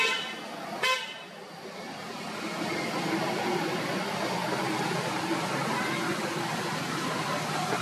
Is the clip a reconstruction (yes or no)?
no